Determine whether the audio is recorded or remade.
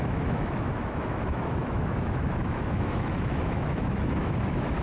remade